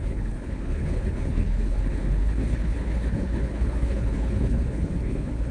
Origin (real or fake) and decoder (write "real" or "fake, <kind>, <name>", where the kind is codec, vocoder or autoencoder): fake, codec, HILCodec